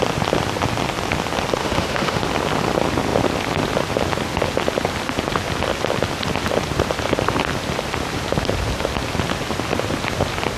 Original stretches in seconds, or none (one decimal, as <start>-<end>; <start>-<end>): 0.0-1.6; 2.2-10.6